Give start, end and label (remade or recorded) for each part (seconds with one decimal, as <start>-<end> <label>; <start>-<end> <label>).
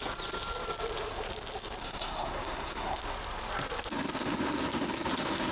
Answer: 0.0-1.8 recorded; 1.8-3.0 remade; 3.0-5.5 recorded